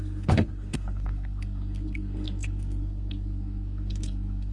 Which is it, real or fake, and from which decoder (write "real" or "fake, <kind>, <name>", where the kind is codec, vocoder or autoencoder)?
fake, codec, SNAC